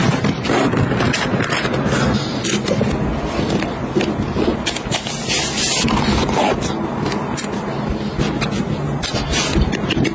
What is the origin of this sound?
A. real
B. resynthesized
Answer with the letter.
A